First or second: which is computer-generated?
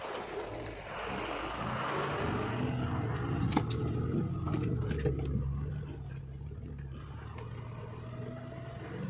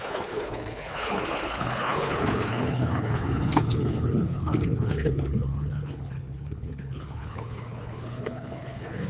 second